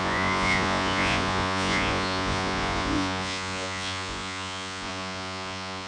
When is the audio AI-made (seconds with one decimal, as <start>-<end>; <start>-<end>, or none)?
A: 0.0-5.9